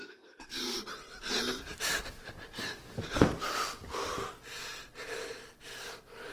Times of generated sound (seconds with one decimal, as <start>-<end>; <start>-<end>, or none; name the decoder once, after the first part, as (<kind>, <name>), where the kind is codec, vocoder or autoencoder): 0.0-0.8 (codec, SNAC)